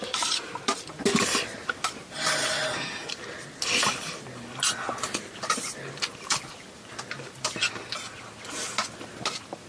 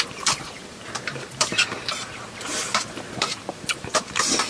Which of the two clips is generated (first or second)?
second